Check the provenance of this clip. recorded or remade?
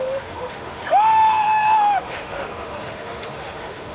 remade